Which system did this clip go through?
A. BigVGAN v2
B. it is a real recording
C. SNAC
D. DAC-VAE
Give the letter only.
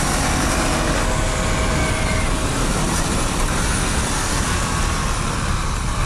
B